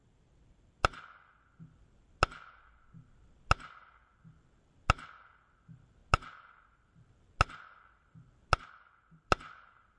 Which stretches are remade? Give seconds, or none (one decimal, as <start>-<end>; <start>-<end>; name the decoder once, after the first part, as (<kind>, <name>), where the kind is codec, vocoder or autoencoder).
none